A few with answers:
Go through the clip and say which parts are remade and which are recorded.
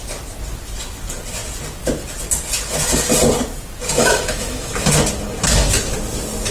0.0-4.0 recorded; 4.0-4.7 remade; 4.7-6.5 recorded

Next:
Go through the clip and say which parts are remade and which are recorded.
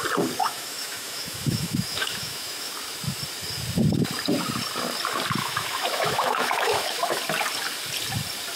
0.0-0.4 recorded; 0.4-2.7 remade; 2.7-5.4 recorded; 5.4-7.2 remade; 7.2-8.6 recorded